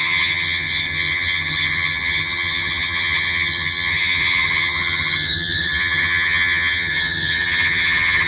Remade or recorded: remade